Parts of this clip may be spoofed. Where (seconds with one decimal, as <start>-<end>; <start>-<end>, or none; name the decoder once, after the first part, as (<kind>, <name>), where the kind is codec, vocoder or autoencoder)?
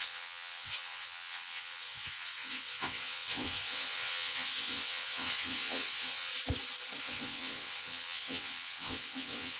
0.0-6.3 (vocoder, WaveNeXt); 7.0-9.6